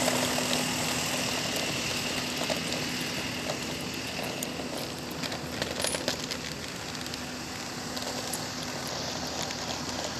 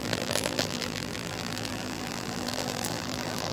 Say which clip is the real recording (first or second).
first